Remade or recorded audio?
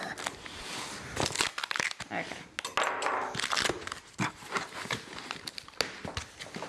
recorded